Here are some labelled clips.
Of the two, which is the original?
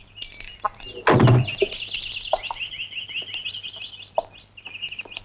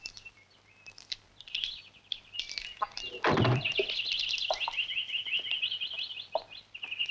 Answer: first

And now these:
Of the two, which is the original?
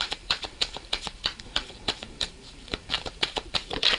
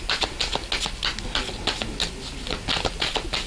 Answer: second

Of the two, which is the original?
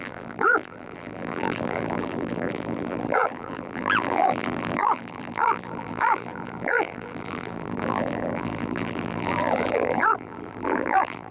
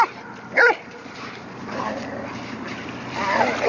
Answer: second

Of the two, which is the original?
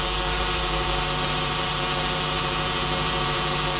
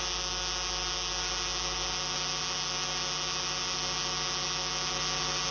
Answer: second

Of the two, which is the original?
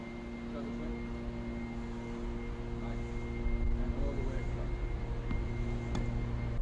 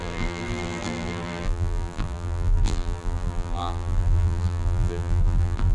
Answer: first